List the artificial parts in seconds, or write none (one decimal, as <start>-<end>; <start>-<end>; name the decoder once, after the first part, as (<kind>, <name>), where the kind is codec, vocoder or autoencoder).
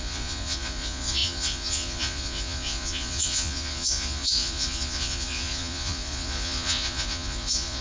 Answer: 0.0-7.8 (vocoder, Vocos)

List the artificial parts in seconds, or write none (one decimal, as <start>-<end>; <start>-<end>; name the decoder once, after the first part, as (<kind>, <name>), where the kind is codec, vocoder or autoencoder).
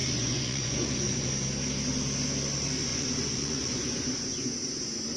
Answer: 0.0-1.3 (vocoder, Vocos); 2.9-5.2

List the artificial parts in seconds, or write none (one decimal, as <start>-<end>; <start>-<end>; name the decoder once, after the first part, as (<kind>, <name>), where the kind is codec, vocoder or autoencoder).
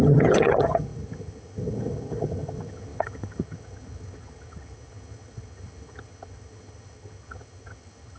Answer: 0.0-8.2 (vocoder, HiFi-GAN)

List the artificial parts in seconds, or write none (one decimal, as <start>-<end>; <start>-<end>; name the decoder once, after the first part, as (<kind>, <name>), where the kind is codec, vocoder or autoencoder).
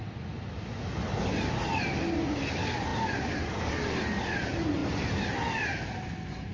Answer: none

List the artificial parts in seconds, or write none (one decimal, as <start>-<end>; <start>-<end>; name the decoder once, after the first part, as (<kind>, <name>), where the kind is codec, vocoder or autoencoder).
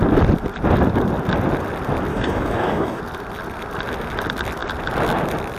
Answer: 2.1-3.0 (codec, DAC)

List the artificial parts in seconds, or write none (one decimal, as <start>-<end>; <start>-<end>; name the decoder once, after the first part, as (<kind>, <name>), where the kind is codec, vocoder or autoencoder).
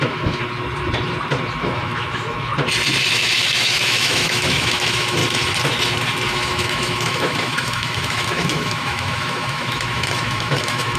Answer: 0.0-0.4 (autoencoder, DAC-VAE); 1.6-2.5; 3.1-5.2; 6.3-11.0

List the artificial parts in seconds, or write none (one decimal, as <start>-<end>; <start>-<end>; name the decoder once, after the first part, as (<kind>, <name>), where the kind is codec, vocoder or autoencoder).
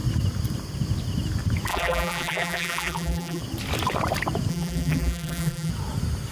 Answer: 1.7-3.4 (vocoder, BigVGAN v2); 4.5-5.7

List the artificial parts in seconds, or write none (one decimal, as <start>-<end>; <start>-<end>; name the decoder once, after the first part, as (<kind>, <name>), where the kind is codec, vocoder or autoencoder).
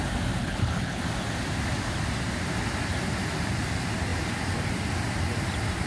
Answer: 0.4-1.0 (codec, HILCodec)